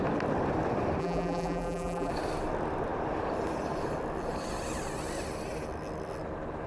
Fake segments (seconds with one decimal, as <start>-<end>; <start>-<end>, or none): 1.0-2.1